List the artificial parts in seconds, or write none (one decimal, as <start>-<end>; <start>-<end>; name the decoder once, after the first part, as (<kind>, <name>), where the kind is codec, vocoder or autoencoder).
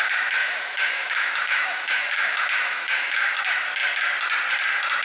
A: 0.4-3.4 (autoencoder, DAC-VAE)